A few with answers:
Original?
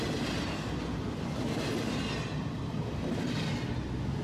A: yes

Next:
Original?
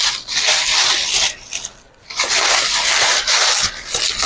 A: yes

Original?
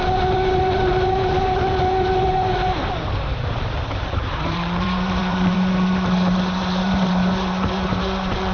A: no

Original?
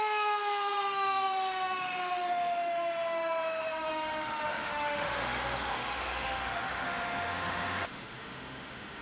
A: no